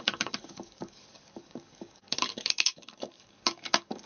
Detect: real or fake fake